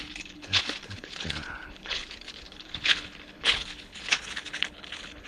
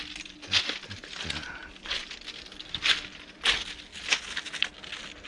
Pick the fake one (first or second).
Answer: first